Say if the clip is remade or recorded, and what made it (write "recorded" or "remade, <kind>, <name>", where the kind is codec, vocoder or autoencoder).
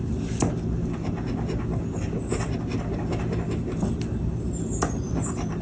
recorded